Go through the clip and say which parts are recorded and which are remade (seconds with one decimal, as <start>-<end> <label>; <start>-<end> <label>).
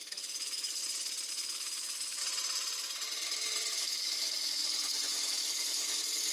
0.0-0.8 remade; 0.8-1.3 recorded; 1.3-2.2 remade; 2.2-3.7 recorded; 3.7-6.3 remade